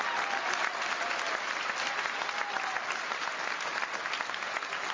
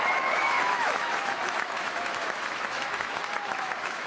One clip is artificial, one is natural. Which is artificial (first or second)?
second